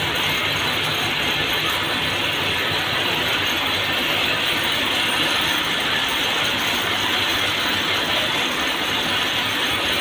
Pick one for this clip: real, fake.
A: real